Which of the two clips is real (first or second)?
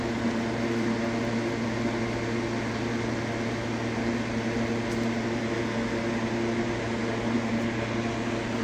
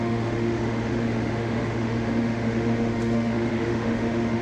first